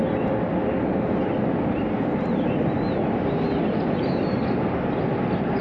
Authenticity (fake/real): real